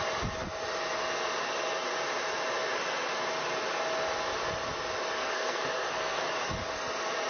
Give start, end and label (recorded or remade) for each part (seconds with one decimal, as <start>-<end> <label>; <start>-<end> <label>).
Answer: 0.0-5.2 recorded; 5.2-6.2 remade; 6.2-7.3 recorded